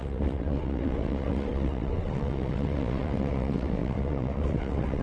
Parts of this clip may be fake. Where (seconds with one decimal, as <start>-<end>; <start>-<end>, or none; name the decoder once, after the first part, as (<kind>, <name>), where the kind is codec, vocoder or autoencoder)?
0.0-5.0 (vocoder, WaveNeXt)

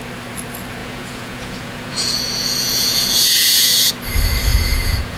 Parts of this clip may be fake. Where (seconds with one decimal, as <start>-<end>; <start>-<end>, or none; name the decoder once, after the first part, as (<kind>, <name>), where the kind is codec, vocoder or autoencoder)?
0.8-3.9 (vocoder, Vocos); 4.5-5.2

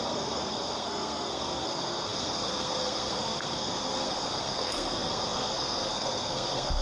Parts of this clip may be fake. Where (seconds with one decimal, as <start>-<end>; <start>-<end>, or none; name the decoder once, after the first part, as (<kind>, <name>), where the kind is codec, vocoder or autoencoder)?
0.0-6.8 (codec, SNAC)